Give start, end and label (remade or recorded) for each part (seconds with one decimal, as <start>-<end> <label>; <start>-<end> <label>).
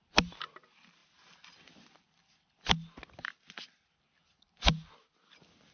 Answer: 0.0-5.7 recorded